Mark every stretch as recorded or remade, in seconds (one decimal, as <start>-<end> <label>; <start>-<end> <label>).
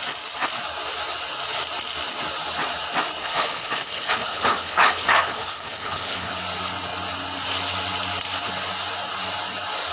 0.0-3.2 recorded; 3.2-6.3 remade; 6.3-9.9 recorded